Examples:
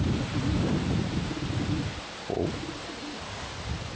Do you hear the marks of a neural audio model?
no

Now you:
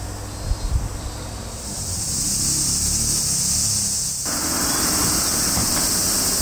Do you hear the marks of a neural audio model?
no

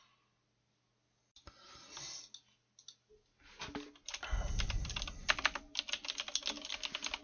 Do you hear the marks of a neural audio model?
no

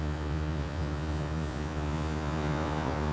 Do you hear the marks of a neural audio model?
yes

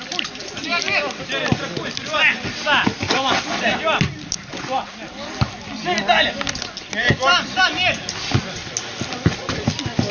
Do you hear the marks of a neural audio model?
no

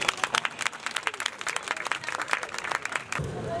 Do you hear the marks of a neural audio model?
no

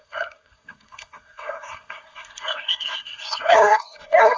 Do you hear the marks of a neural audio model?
yes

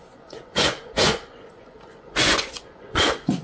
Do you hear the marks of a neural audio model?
yes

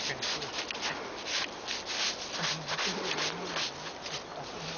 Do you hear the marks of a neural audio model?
no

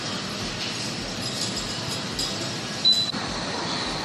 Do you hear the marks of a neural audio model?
no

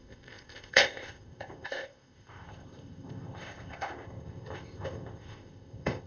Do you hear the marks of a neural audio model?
yes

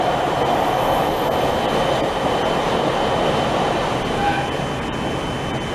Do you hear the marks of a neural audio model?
no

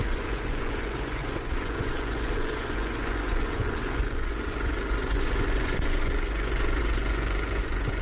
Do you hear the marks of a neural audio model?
yes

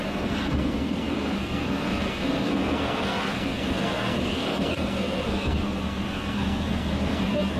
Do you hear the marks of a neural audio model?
yes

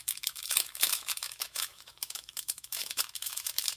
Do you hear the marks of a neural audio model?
yes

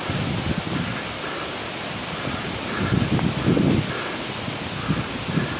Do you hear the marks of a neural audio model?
no